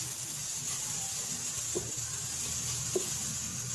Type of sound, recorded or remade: recorded